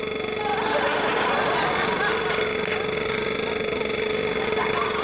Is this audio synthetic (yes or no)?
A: no